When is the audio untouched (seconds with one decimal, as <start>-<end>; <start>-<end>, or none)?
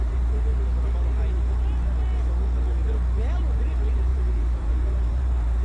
0.5-3.6